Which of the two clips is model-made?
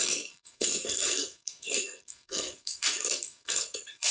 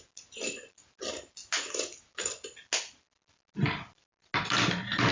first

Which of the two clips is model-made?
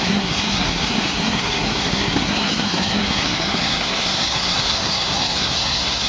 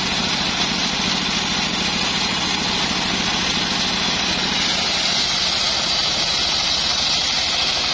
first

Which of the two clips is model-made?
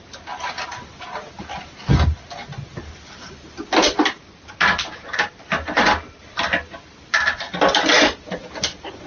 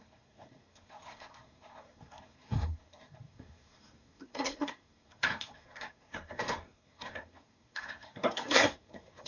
second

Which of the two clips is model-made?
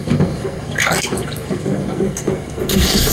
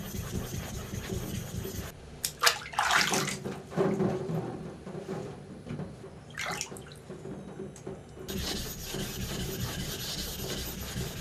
first